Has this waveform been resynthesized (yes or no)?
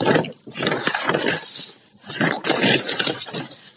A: no